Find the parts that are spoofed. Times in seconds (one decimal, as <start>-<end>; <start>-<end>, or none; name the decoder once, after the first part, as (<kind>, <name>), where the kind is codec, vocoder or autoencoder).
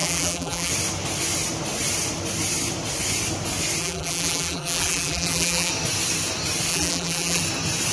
0.0-0.7 (vocoder, BigVGAN v2); 3.8-5.7; 6.7-7.4